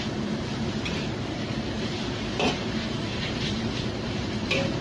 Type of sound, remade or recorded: remade